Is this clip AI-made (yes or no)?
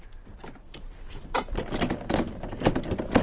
no